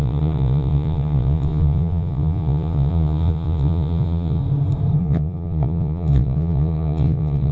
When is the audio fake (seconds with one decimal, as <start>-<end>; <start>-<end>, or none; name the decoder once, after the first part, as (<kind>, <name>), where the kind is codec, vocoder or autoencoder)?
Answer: 0.0-4.4 (vocoder, Vocos); 5.0-7.5